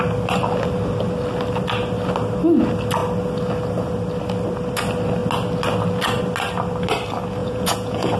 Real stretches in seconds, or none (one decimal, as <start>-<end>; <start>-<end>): 0.0-7.4